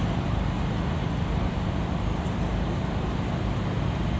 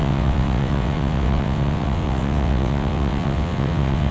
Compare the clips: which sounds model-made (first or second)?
second